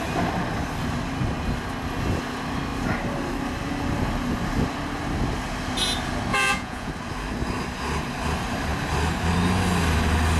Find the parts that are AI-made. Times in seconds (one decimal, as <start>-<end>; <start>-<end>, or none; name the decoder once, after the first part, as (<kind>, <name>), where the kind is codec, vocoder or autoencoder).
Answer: 6.3-6.9 (vocoder, Vocos)